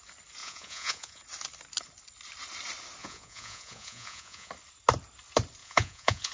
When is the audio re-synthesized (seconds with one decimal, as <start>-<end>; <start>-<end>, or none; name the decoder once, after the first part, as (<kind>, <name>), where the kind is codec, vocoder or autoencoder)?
0.4-1.2 (vocoder, Vocos); 3.0-4.5; 5.6-6.3